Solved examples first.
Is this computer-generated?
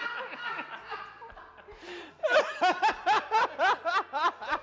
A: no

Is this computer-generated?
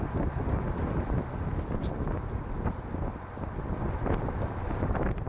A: no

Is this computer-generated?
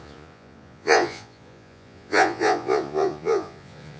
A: yes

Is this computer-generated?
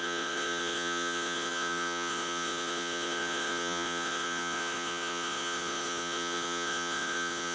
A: yes